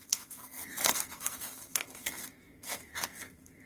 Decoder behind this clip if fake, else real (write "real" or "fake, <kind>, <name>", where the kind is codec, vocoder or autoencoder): fake, codec, SNAC